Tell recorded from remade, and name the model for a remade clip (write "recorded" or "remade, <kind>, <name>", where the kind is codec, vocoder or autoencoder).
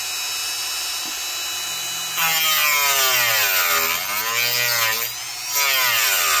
recorded